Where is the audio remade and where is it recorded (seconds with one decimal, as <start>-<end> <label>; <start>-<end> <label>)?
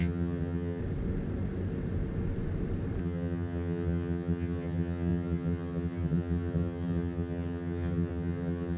0.0-0.8 remade; 0.8-3.0 recorded; 3.0-8.8 remade